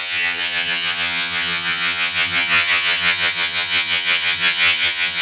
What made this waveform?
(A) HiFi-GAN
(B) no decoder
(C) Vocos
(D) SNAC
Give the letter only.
A